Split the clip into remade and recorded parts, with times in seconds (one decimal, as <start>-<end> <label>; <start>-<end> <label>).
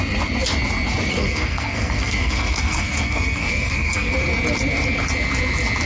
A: 0.0-1.1 recorded; 1.1-4.1 remade; 4.1-5.9 recorded